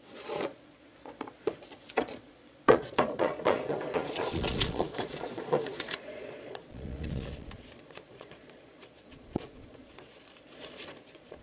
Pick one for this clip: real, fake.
fake